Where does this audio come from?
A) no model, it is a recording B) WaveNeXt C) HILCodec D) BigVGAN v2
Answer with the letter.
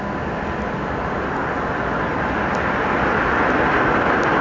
A